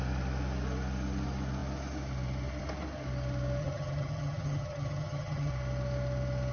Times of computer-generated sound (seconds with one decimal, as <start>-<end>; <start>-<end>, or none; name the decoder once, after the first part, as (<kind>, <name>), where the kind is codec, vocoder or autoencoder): 3.6-5.5 (vocoder, HiFi-GAN)